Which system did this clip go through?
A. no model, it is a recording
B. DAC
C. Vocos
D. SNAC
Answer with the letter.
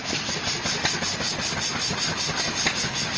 A